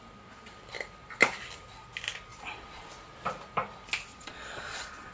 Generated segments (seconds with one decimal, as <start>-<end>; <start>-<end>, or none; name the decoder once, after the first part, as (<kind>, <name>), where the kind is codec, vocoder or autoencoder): 2.3-2.9 (vocoder, Vocos); 4.1-5.1

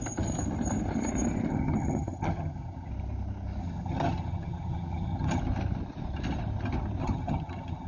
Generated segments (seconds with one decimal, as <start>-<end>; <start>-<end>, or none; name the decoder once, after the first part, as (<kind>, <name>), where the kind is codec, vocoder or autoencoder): 1.5-2.9 (vocoder, HiFi-GAN); 3.6-5.4; 7.0-7.9

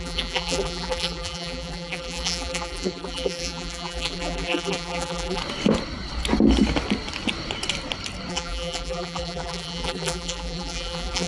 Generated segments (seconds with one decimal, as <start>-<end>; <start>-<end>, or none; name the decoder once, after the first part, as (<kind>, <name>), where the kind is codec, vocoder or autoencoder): 0.0-5.4 (vocoder, BigVGAN v2); 8.3-11.3